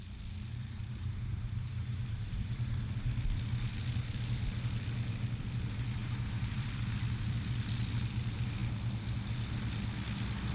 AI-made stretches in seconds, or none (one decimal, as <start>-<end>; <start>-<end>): 0.5-2.6; 6.0-6.7